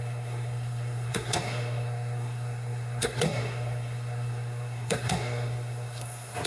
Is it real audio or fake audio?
fake